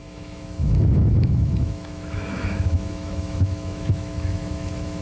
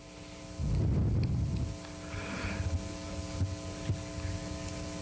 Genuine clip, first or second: second